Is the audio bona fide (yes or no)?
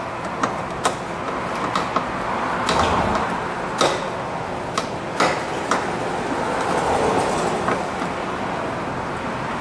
yes